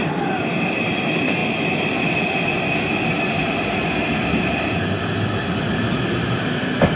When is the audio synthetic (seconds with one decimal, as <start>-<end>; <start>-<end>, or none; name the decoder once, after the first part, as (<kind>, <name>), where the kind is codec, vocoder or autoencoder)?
none